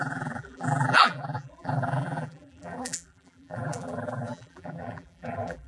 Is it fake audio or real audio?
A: fake